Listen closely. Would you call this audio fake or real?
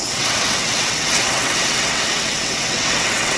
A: fake